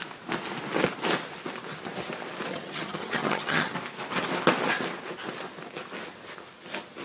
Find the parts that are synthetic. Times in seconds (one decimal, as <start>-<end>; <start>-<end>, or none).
2.5-3.7

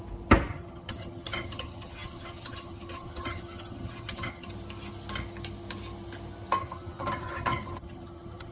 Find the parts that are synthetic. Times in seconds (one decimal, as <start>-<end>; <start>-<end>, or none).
0.5-4.5; 6.6-8.5

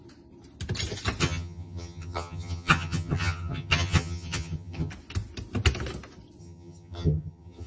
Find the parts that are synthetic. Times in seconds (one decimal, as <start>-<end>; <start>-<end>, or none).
1.2-4.9; 6.4-7.7

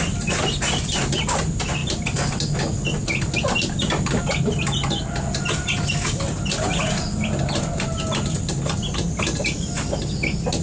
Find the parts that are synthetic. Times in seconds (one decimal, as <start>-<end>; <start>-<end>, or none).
none

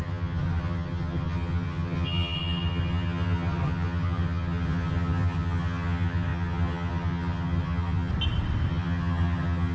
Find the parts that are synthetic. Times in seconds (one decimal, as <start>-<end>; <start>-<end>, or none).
0.0-8.1; 8.7-9.7

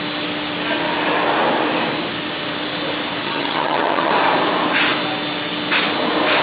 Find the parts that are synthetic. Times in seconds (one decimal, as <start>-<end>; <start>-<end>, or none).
3.2-4.1

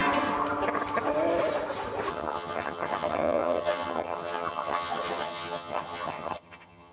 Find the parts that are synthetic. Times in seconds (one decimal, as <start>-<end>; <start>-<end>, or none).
2.1-6.9